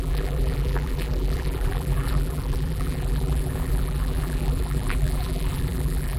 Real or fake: fake